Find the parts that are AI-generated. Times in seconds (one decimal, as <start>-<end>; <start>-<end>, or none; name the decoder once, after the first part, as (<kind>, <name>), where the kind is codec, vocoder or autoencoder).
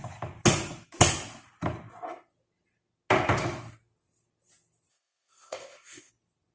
4.9-6.1 (codec, ZipCodec)